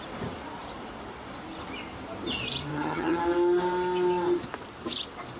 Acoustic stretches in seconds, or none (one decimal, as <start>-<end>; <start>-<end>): 0.0-2.7; 3.2-5.4